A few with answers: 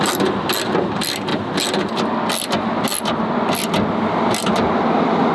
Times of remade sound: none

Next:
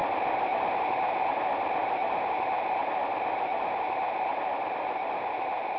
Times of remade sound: none

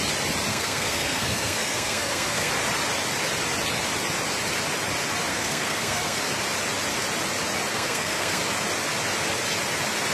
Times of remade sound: 0.5-2.5 (codec, SNAC); 5.3-6.2; 7.7-8.4

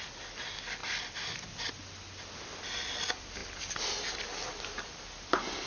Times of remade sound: none

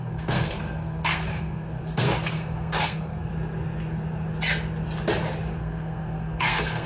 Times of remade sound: 0.0-3.3 (codec, SNAC); 5.6-6.9

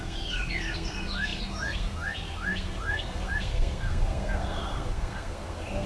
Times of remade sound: 0.0-5.9 (codec, SNAC)

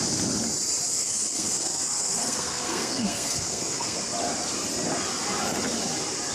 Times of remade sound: 0.9-4.0 (codec, SNAC)